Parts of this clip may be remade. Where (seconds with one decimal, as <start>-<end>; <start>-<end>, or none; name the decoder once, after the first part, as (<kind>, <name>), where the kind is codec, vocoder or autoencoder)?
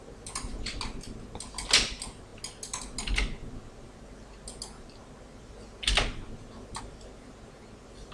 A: none